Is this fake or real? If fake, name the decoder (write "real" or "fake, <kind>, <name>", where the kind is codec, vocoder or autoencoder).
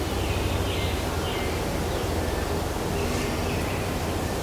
real